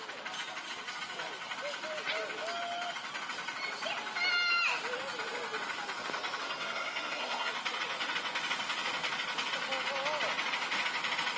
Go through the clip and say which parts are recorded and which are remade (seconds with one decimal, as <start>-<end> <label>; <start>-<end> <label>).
0.0-6.4 recorded; 6.4-7.5 remade; 7.5-11.4 recorded